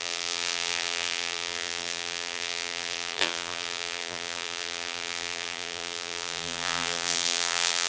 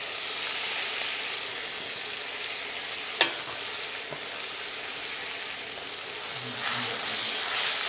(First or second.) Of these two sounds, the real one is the second